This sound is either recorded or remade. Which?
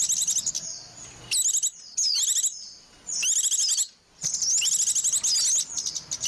recorded